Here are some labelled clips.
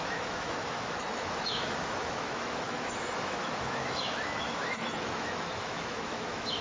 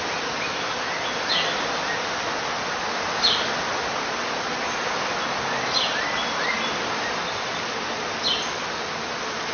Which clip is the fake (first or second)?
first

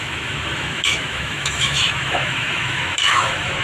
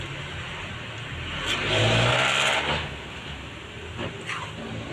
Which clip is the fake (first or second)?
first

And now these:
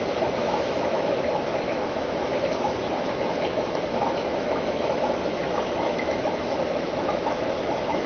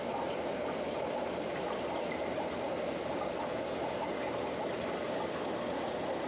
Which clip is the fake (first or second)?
first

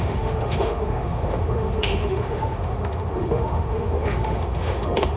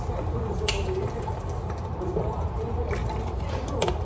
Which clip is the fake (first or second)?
first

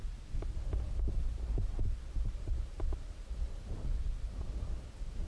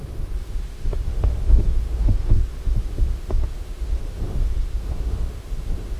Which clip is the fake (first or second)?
second